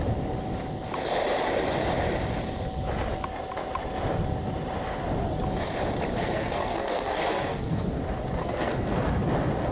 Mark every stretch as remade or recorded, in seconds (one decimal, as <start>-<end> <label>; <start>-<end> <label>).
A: 0.0-6.1 recorded; 6.1-8.0 remade; 8.0-8.4 recorded; 8.4-9.2 remade; 9.2-9.7 recorded